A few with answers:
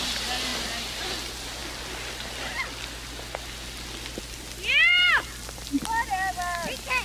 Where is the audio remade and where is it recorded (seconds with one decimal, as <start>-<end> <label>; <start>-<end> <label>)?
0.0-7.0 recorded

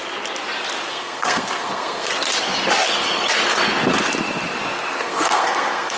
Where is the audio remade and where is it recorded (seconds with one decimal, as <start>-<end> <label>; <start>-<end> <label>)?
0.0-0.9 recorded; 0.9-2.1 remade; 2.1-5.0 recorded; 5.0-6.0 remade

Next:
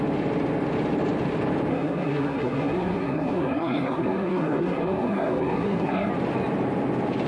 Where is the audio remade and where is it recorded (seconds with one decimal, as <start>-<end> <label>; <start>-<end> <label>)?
0.0-1.7 recorded; 1.7-6.1 remade; 6.1-7.3 recorded